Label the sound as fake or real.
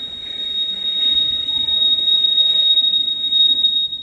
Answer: fake